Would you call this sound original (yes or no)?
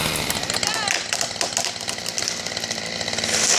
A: yes